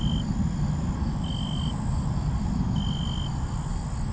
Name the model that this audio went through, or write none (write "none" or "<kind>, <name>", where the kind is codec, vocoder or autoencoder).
none